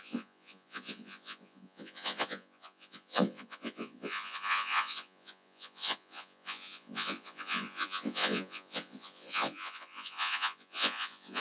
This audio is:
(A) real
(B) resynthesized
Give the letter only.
B